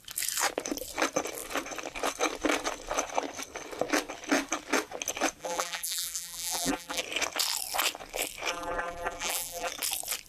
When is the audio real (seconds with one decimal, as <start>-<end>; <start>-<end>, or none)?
0.0-5.4; 7.0-8.5; 9.7-10.3